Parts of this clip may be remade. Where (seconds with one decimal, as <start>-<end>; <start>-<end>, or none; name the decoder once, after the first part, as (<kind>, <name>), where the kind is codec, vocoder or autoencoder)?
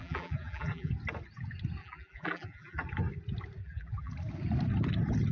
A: 0.0-0.9 (vocoder, BigVGAN v2); 1.8-2.8; 3.6-4.1